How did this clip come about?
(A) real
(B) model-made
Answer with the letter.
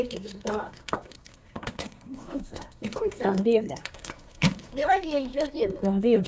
B